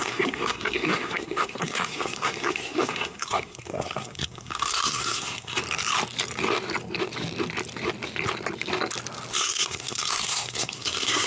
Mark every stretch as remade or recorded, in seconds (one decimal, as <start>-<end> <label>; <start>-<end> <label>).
0.0-5.6 remade; 5.6-9.3 recorded; 9.3-11.3 remade